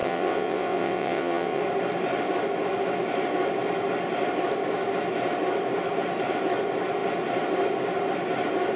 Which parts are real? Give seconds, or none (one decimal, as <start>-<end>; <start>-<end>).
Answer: 1.6-8.8